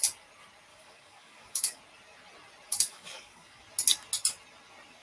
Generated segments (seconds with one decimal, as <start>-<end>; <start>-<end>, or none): 0.7-1.8; 2.7-3.6